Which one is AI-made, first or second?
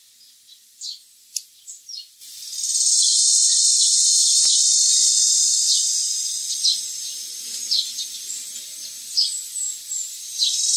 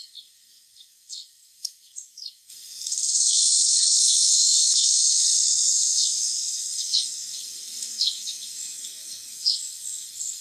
second